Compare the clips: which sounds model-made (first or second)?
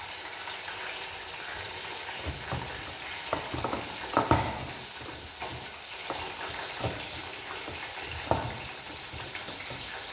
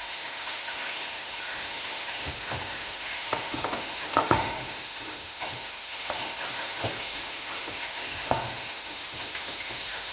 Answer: second